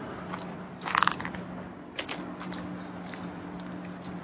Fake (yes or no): no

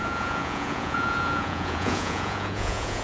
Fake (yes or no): yes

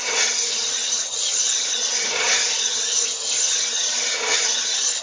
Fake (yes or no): yes